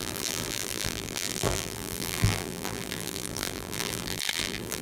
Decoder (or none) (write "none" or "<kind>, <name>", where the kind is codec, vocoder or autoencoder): vocoder, BigVGAN v2